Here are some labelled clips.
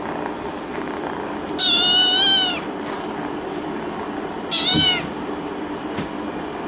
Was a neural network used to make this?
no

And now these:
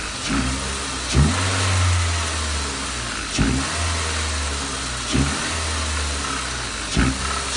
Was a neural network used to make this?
no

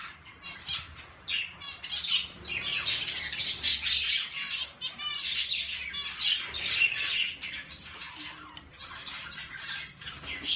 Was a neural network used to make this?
yes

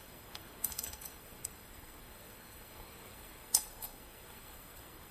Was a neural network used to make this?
yes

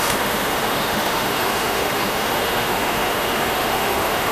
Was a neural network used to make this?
yes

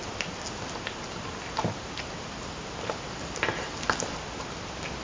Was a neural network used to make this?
no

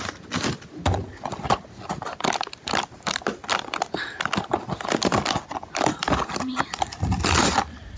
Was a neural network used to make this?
no